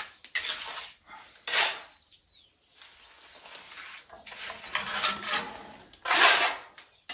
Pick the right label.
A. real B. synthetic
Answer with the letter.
A